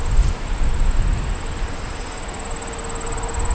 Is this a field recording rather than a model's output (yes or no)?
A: yes